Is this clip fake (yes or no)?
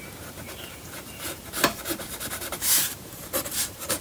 yes